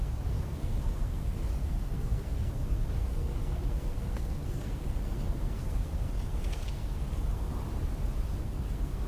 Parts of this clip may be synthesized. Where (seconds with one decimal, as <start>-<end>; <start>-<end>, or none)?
0.0-7.5; 8.4-9.1